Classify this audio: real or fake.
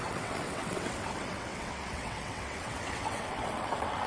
fake